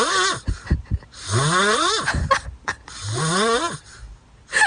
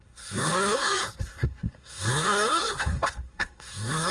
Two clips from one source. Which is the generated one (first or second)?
second